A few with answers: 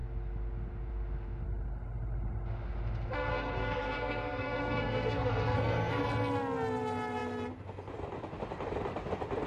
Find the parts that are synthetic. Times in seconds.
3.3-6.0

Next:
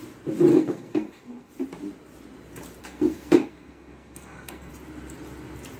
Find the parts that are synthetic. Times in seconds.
0.5-1.5; 2.8-4.7

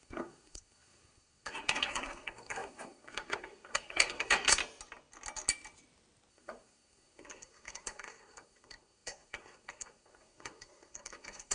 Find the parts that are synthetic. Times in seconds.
0.0-4.6; 6.3-11.5

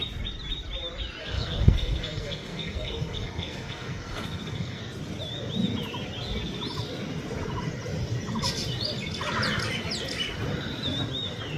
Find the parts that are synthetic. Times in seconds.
1.2-4.8

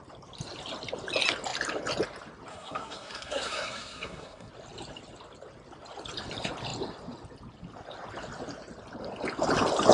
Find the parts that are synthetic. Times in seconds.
2.5-4.5

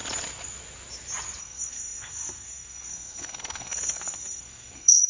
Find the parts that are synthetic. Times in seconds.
1.4-5.1

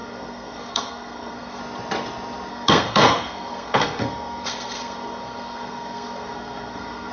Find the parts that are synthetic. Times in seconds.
0.0-1.6; 2.5-7.1

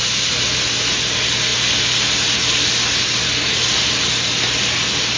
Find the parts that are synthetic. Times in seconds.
none